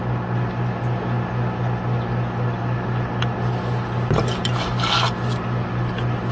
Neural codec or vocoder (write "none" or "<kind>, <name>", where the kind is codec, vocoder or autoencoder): none